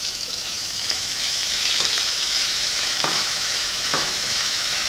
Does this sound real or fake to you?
fake